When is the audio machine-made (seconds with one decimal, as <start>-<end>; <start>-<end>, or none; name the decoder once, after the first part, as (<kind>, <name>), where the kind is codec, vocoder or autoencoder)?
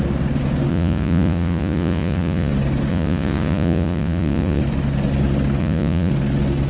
0.7-2.5 (vocoder, Vocos); 2.9-4.6; 5.6-6.1